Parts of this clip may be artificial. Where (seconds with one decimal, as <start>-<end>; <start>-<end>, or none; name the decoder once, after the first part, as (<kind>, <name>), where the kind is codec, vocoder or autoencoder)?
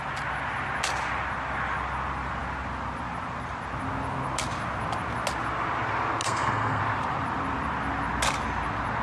6.2-6.8 (codec, SNAC)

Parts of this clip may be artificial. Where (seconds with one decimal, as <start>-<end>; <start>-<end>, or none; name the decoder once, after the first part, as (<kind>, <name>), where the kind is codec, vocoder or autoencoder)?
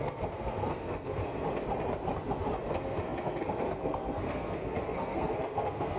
0.0-1.2 (codec, SNAC); 2.7-6.0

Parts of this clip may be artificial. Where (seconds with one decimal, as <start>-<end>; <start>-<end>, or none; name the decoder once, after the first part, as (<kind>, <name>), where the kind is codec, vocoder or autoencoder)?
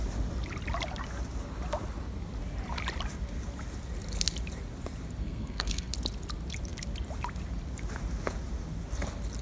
5.2-5.9 (codec, SNAC)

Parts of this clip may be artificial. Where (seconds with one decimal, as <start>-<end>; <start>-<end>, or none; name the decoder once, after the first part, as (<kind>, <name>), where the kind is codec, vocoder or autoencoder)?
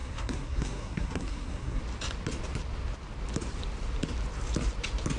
0.0-1.8 (codec, SNAC)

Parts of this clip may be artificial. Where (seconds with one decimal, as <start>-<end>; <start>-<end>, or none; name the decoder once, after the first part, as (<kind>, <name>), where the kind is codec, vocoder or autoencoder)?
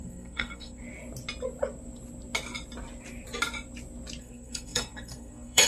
0.0-0.8 (codec, SNAC); 4.2-5.7